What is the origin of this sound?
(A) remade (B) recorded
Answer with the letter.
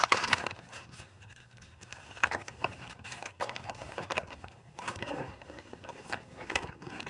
A